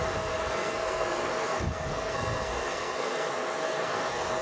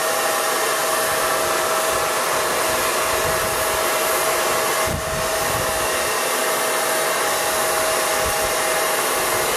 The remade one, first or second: first